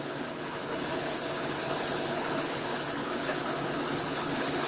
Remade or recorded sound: remade